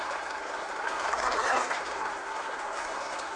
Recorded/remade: remade